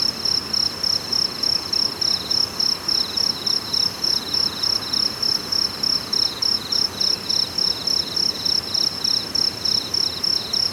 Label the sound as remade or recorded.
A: recorded